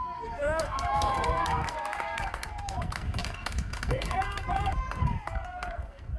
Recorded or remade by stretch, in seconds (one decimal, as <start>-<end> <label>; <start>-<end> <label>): 0.0-6.2 remade